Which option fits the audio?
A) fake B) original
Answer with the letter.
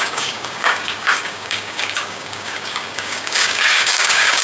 A